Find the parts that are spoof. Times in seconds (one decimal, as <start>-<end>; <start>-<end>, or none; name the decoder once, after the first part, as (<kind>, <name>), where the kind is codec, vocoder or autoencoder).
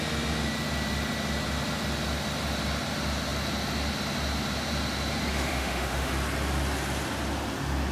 5.3-6.1 (autoencoder, DAC-VAE)